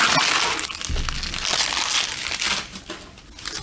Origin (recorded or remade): recorded